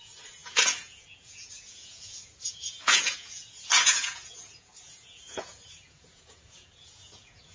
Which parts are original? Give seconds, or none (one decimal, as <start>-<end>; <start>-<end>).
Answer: none